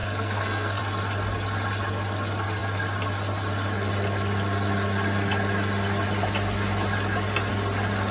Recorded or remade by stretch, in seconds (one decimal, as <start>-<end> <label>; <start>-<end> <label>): 0.0-0.8 remade; 0.8-8.1 recorded